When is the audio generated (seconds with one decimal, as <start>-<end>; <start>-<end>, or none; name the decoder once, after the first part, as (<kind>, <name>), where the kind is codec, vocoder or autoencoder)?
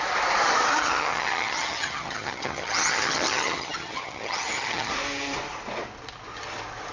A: 0.8-4.9 (vocoder, HiFi-GAN)